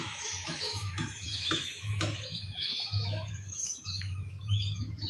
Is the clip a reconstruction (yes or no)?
yes